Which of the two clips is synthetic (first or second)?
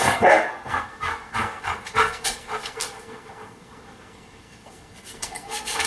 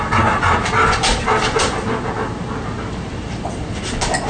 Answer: first